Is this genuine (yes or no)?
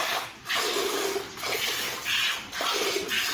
yes